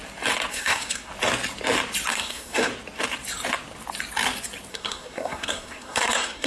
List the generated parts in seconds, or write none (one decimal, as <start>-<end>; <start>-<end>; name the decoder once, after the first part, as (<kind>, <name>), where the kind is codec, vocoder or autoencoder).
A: 0.5-1.1 (codec, SNAC); 2.1-2.7; 4.7-6.5